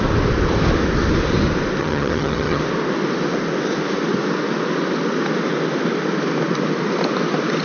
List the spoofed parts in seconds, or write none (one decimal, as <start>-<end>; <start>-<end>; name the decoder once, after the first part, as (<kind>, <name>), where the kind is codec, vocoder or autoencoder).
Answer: 1.8-2.6 (vocoder, HiFi-GAN)